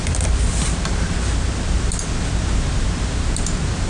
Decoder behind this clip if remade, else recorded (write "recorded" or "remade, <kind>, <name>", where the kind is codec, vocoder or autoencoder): recorded